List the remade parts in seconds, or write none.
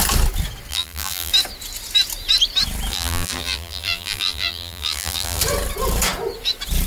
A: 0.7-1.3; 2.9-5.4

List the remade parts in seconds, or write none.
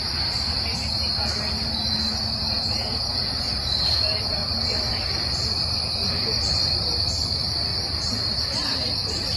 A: 4.4-6.8; 7.7-8.6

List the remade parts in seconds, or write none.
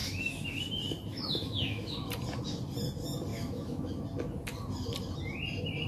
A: 0.0-0.6; 1.1-2.1; 3.3-3.9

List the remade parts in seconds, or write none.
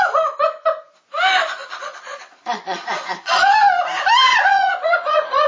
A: 1.6-3.5; 4.3-5.5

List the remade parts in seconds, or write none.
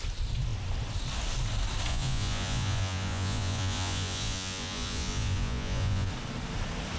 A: 1.9-6.1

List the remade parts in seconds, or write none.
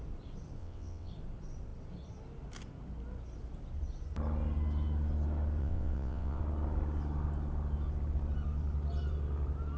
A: 0.6-1.1; 5.6-6.4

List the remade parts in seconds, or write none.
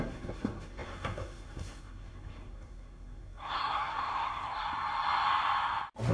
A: 0.0-4.6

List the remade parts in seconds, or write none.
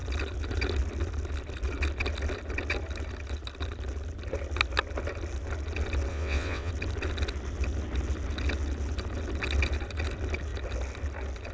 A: 6.1-6.7